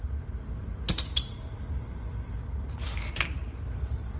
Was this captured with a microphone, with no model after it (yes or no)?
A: yes